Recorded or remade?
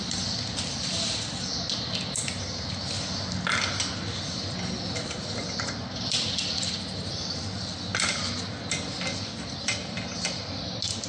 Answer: recorded